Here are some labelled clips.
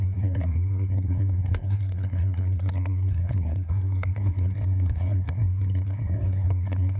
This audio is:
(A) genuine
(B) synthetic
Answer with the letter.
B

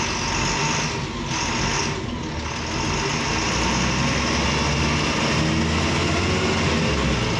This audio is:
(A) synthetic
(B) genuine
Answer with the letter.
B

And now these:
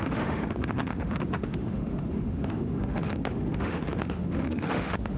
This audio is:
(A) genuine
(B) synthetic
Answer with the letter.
B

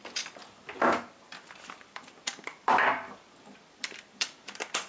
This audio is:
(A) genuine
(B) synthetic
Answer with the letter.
B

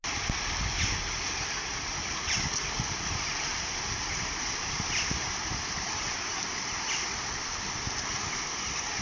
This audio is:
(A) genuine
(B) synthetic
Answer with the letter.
A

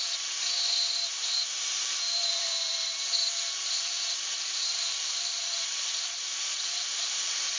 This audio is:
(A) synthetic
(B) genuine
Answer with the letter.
A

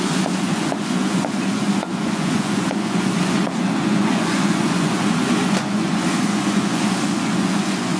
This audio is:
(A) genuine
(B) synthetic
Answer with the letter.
B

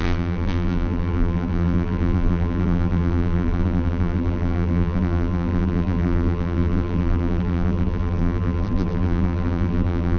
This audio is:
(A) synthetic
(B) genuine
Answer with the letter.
A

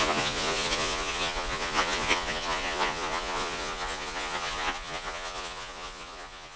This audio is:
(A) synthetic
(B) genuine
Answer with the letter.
A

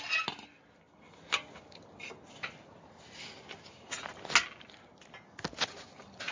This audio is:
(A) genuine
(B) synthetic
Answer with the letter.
A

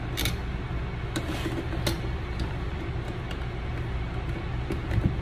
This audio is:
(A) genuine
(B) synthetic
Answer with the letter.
A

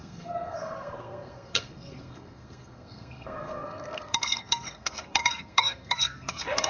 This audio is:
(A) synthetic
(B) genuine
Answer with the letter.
A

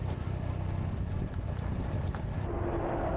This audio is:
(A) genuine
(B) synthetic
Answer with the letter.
B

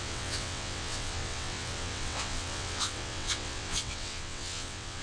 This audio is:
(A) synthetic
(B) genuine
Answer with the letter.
A